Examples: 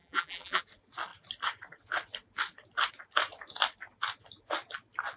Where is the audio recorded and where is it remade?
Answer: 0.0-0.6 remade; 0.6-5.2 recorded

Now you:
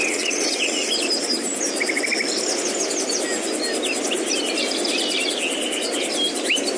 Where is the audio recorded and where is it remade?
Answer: 0.0-0.9 remade; 0.9-6.8 recorded

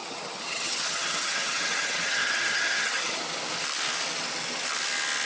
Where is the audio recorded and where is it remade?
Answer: 0.0-3.2 remade; 3.2-5.3 recorded

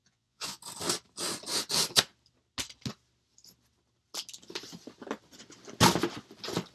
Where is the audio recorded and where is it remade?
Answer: 0.0-0.6 remade; 0.6-6.7 recorded

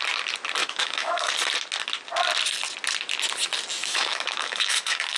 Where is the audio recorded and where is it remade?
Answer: 0.0-0.6 recorded; 0.6-1.3 remade; 1.3-3.8 recorded; 3.8-5.2 remade

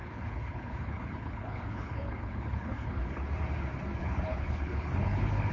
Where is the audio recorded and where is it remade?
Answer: 0.0-3.3 remade; 3.3-4.0 recorded; 4.0-5.5 remade

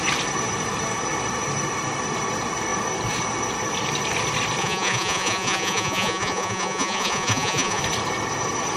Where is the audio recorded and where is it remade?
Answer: 0.0-4.6 recorded; 4.6-7.8 remade; 7.8-8.8 recorded

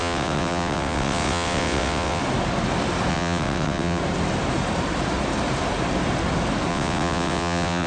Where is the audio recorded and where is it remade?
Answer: 0.0-2.2 remade; 2.2-3.1 recorded; 3.1-4.0 remade; 4.0-6.7 recorded; 6.7-7.9 remade